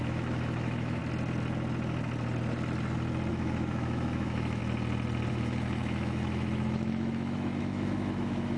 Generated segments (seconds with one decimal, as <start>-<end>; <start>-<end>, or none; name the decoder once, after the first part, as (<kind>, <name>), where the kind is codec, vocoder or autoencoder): 0.0-1.0 (autoencoder, DAC-VAE); 3.3-4.6; 5.3-8.6